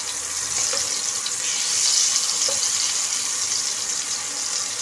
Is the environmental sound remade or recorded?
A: recorded